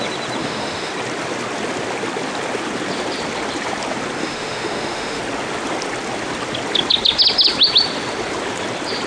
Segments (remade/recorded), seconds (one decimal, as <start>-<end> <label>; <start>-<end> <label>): 0.0-0.4 recorded; 0.4-0.9 remade; 0.9-4.2 recorded; 4.2-5.2 remade; 5.2-9.1 recorded